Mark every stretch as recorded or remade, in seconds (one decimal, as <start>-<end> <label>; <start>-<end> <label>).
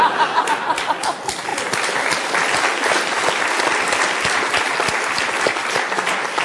0.0-6.4 recorded